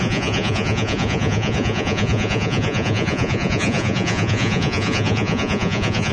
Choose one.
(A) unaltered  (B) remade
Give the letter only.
B